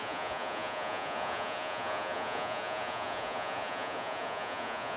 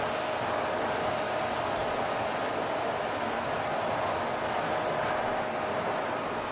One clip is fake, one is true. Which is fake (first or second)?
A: first